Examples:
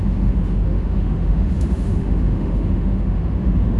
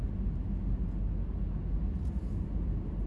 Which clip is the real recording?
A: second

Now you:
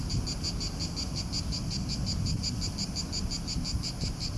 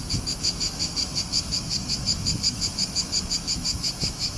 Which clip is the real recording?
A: first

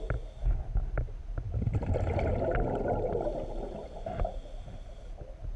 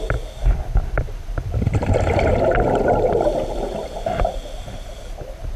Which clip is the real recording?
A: first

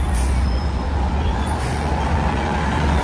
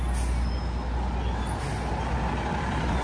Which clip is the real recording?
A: second